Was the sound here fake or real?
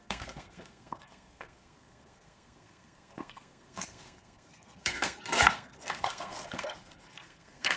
fake